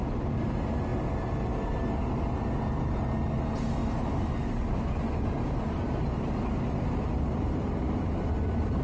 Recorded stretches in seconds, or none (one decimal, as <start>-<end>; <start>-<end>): 0.0-8.8